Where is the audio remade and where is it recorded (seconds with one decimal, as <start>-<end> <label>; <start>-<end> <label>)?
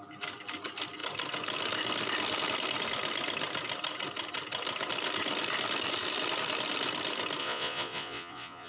0.0-7.4 recorded; 7.4-8.7 remade